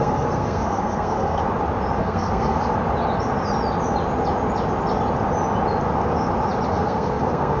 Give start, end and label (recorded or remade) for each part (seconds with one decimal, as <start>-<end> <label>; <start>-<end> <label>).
0.0-1.4 remade; 1.4-2.0 recorded; 2.0-2.7 remade; 2.7-6.7 recorded; 6.7-7.6 remade